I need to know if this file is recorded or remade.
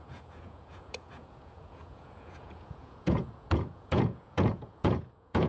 remade